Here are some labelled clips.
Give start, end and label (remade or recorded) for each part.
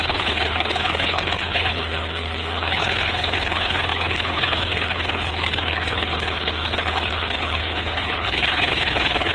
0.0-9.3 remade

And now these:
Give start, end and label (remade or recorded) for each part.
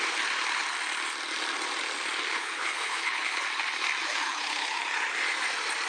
0.0-2.3 recorded; 2.3-3.4 remade; 3.4-4.0 recorded; 4.0-4.8 remade; 4.8-5.9 recorded